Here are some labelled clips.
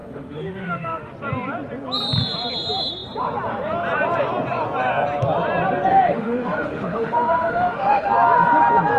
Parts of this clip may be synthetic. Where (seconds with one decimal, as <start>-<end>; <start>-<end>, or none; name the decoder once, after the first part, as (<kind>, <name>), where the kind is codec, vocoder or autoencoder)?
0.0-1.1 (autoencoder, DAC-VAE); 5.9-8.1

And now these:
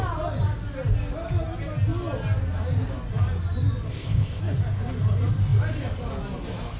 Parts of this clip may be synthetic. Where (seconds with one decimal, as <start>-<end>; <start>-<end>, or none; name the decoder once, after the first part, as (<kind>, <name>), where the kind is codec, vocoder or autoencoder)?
3.9-4.4 (codec, ZipCodec)

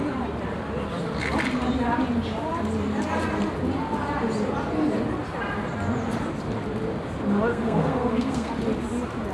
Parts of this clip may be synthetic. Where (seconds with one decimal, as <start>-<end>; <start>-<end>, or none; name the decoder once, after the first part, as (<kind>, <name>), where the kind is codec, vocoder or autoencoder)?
7.5-8.5 (codec, SNAC)

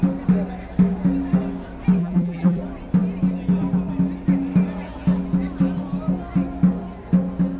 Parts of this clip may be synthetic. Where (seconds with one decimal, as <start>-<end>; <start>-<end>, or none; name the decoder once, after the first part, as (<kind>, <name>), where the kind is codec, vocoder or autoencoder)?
2.0-2.6 (vocoder, BigVGAN v2)